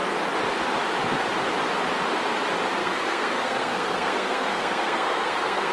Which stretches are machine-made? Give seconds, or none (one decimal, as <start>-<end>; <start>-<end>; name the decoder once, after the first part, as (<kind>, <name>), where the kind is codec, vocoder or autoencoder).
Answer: 2.8-5.7 (codec, SNAC)